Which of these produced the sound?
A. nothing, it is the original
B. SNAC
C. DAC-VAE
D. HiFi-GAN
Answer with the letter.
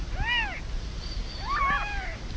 A